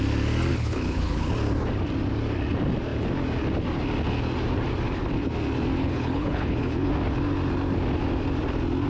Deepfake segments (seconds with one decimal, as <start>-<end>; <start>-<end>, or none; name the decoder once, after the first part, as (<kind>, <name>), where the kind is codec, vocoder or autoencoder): 0.5-1.3 (codec, HILCodec); 5.8-6.9